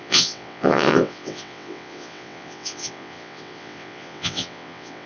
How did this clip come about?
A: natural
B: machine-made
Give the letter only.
B